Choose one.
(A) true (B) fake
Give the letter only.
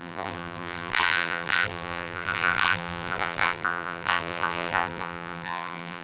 B